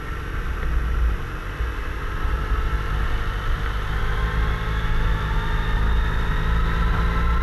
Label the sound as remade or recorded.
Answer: recorded